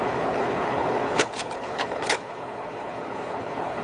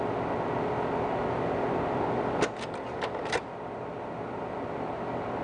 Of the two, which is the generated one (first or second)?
first